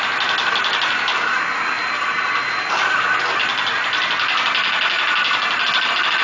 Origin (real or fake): real